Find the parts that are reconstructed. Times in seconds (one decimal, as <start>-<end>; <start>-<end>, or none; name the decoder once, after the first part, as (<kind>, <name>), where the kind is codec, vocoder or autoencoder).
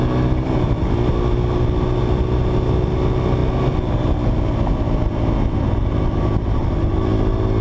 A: none